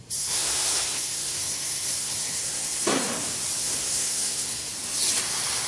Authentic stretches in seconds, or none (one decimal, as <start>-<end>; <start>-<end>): 3.1-3.6; 4.7-5.7